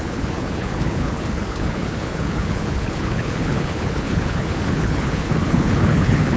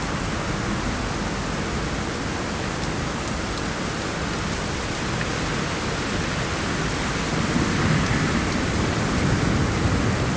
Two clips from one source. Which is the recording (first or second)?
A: second